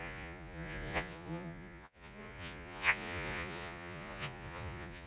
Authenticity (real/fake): fake